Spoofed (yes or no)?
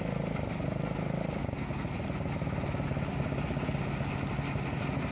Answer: no